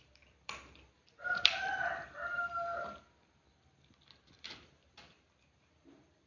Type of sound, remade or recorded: remade